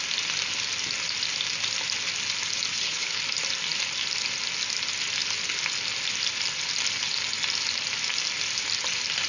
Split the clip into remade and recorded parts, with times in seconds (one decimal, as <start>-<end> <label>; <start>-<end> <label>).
0.0-2.7 recorded; 2.7-3.2 remade; 3.2-9.3 recorded